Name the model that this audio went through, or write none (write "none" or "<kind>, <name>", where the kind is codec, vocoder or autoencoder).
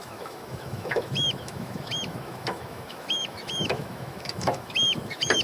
autoencoder, DAC-VAE